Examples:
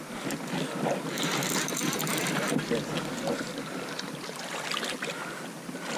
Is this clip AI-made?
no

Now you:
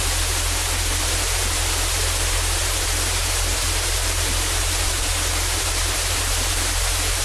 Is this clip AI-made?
yes